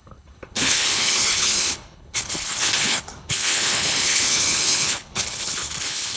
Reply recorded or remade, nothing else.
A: remade